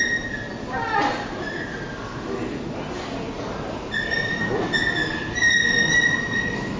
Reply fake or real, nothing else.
real